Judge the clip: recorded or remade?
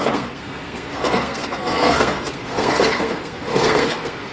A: remade